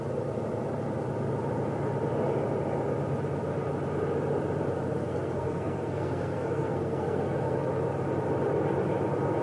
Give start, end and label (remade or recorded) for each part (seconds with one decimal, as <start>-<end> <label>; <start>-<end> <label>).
0.0-5.0 recorded; 5.0-7.7 remade; 7.7-9.4 recorded